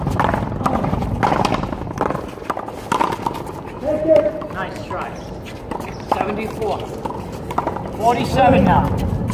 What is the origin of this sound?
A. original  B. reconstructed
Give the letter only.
B